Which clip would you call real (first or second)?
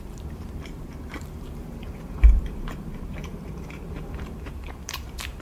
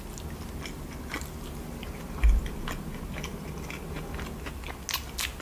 second